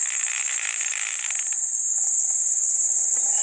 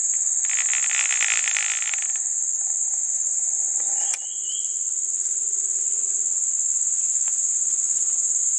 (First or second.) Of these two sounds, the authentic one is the second